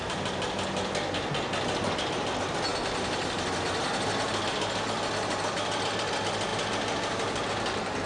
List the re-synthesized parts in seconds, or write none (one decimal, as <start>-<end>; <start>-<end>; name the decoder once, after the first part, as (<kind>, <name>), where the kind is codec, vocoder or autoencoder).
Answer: none